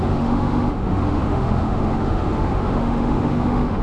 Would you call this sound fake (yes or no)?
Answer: yes